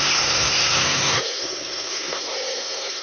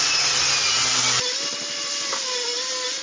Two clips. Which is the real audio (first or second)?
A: second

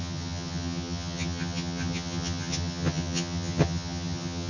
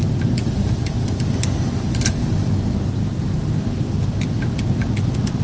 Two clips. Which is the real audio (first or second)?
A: second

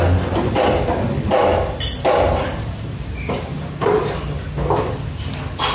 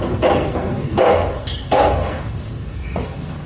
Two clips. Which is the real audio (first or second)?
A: first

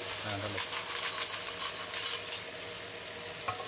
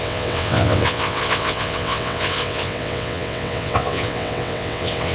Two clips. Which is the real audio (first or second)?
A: first